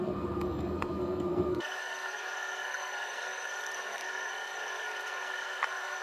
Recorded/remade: remade